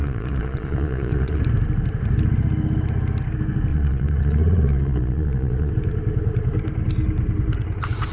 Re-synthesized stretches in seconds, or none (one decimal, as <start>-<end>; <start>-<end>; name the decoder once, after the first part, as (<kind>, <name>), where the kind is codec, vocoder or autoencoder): 0.0-1.4 (vocoder, Vocos); 3.7-5.7